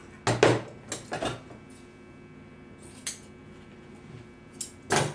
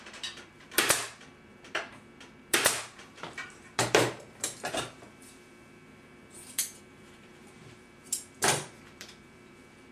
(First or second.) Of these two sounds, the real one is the first